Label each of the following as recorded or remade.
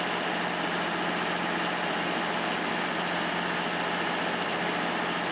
recorded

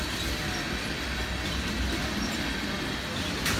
recorded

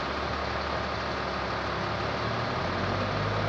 recorded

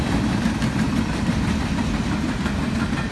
remade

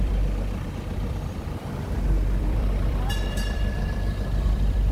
remade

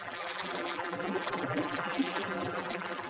remade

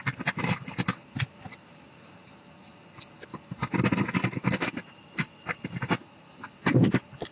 remade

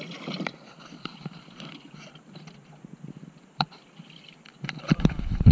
remade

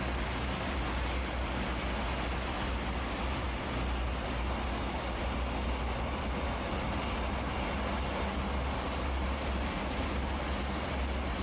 recorded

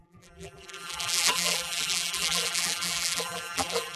remade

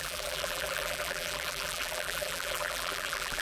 remade